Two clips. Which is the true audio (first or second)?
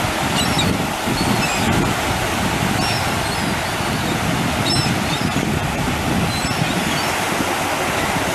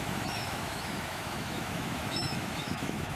first